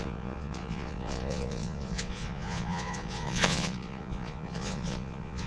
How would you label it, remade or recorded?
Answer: remade